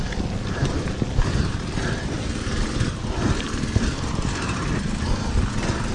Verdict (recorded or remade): recorded